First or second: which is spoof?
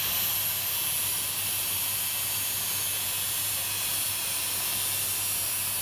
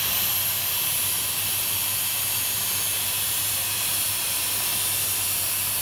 second